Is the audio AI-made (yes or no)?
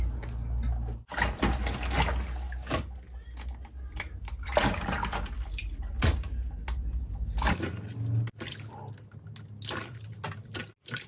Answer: no